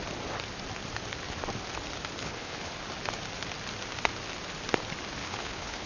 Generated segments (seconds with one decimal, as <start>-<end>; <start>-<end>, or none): 2.2-2.7; 5.2-5.9